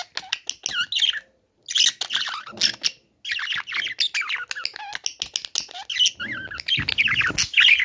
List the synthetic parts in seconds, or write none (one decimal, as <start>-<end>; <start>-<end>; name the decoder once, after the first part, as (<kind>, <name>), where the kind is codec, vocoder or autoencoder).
none